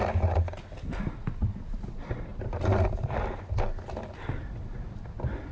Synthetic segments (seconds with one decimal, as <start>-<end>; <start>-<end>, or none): none